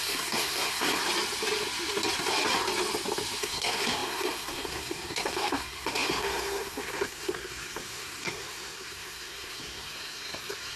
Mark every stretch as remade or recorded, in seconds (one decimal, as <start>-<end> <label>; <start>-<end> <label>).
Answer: 0.0-1.0 remade; 1.0-3.4 recorded; 3.4-10.8 remade